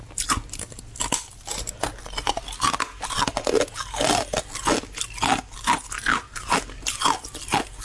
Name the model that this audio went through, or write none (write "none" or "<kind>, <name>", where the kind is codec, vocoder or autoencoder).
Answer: none